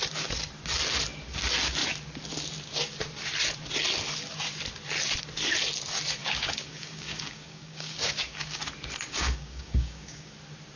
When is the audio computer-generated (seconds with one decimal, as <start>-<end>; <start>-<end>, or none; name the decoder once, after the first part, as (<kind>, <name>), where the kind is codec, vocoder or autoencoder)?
6.2-8.6 (codec, DAC); 9.1-10.3